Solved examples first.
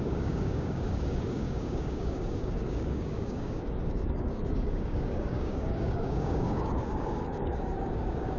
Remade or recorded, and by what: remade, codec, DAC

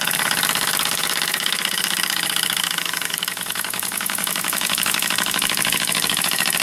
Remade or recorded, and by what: remade, codec, DAC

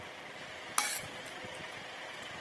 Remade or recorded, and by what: recorded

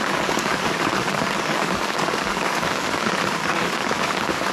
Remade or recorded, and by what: remade, codec, DAC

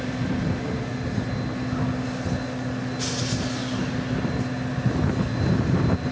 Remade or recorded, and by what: recorded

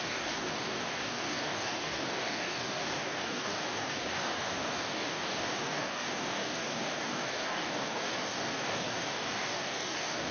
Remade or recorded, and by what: remade, codec, DAC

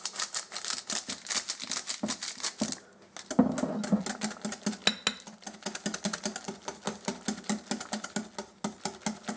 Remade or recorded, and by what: recorded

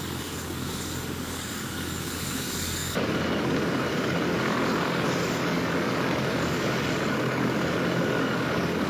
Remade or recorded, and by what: remade, codec, DAC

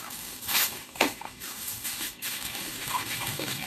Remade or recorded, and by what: remade, codec, DAC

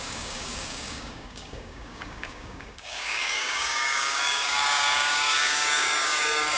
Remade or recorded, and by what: remade, codec, DAC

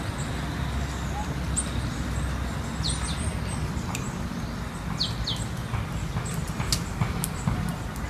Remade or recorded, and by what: recorded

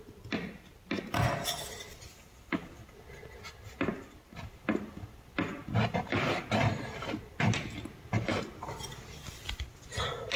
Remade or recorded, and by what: recorded